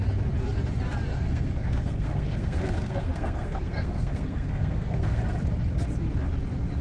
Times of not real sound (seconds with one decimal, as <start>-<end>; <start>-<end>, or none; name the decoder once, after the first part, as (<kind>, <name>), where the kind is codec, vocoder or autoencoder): 1.1-5.2 (codec, SNAC)